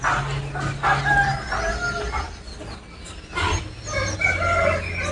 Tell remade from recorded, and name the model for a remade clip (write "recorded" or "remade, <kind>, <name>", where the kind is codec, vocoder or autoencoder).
recorded